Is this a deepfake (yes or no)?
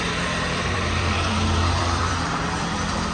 yes